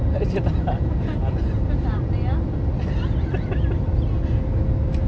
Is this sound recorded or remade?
recorded